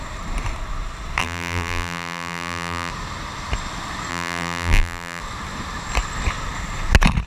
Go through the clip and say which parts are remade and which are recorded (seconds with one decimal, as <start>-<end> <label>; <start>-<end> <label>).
0.0-1.2 recorded; 1.2-2.9 remade; 2.9-4.1 recorded; 4.1-5.2 remade; 5.2-7.3 recorded